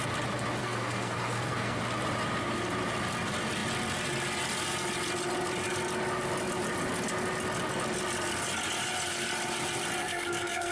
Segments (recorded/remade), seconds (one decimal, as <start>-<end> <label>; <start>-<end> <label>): 0.0-0.6 recorded; 0.6-1.8 remade; 1.8-10.0 recorded; 10.0-10.7 remade